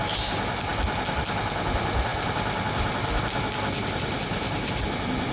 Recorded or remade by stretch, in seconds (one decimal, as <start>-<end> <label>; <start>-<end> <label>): 0.0-5.3 recorded